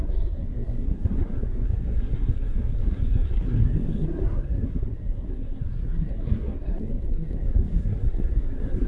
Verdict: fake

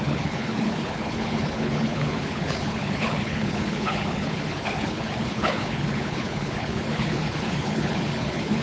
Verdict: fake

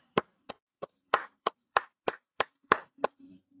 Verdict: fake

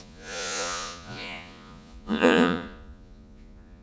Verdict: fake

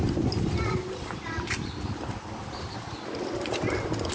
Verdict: real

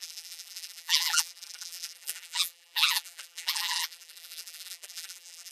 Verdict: fake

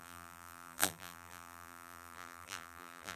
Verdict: fake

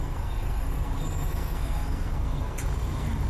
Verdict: fake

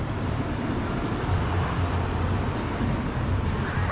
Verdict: real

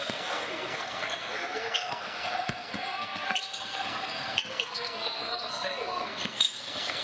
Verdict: fake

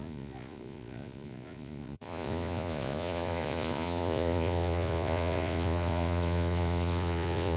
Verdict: fake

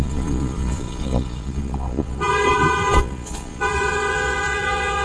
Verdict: fake